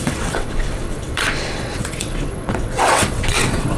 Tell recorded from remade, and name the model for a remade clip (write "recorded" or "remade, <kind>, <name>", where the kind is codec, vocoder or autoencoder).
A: remade, vocoder, WaveNeXt